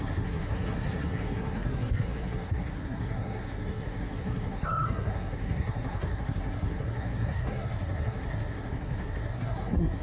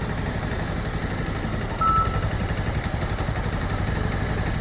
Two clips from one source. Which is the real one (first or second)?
second